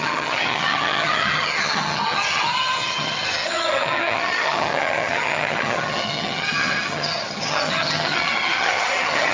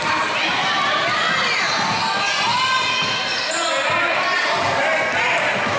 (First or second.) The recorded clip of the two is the second